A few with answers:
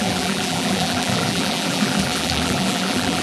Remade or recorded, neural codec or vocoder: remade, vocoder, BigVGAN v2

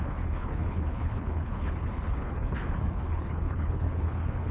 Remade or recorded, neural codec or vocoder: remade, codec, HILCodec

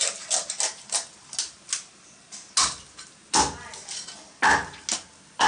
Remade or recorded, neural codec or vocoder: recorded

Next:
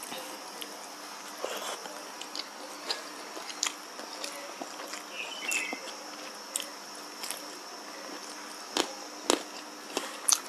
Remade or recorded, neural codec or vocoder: recorded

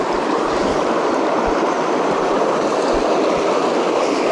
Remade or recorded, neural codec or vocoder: recorded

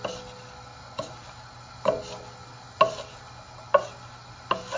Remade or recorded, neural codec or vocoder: recorded